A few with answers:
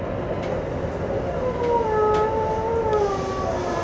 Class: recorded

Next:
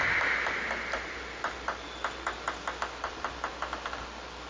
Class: recorded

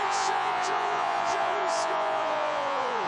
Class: remade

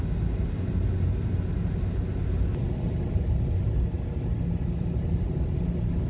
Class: recorded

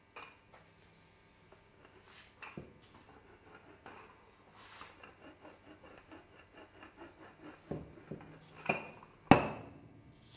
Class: recorded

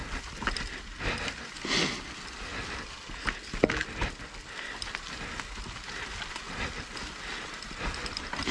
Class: recorded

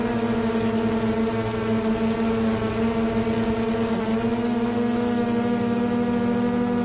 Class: recorded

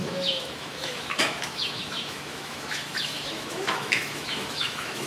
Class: remade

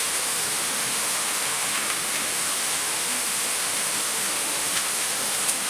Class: remade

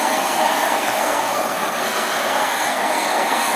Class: remade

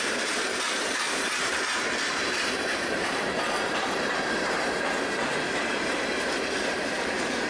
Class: remade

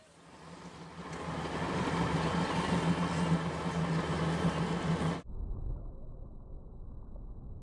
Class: recorded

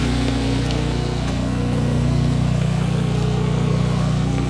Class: remade